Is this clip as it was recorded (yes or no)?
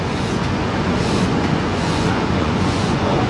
no